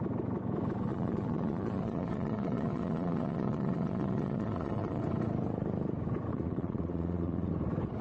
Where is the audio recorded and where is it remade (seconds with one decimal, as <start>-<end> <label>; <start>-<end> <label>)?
0.0-0.9 recorded; 0.9-5.0 remade; 5.0-6.3 recorded; 6.3-7.5 remade; 7.5-8.0 recorded